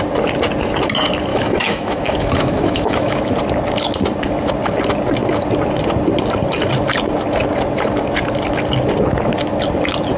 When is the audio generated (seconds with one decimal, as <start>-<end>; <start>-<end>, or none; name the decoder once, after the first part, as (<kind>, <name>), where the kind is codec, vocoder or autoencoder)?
1.3-3.2 (autoencoder, DAC-VAE)